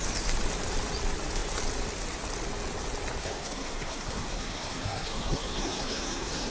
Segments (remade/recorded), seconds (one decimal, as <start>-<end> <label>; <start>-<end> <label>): 0.0-3.2 recorded; 3.2-6.5 remade

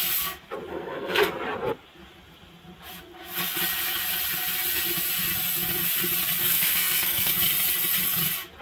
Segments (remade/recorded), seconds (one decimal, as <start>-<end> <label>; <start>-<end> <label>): 0.0-0.7 recorded; 0.7-1.3 remade; 1.3-6.4 recorded; 6.4-7.3 remade; 7.3-8.6 recorded

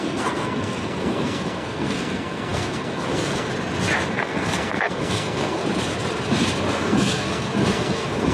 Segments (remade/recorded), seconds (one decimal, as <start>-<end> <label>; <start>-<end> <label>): 0.0-3.5 remade; 3.5-4.1 recorded; 4.1-5.6 remade; 5.6-6.8 recorded; 6.8-8.3 remade

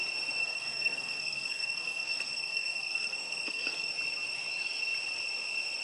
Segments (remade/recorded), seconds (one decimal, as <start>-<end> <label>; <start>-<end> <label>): 0.0-0.4 recorded; 0.4-3.9 remade; 3.9-5.8 recorded